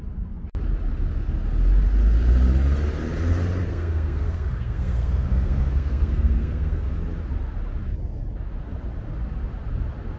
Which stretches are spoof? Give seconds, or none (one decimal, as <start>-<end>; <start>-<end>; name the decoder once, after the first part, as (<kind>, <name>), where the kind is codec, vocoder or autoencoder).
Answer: 3.7-6.9 (codec, SNAC)